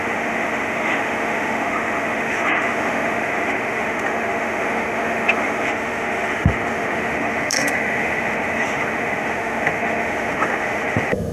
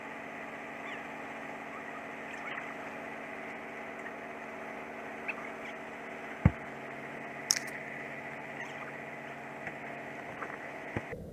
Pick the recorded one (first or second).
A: second